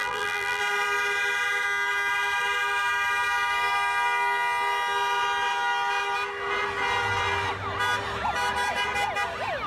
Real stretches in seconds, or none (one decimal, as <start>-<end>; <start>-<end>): 0.6-9.7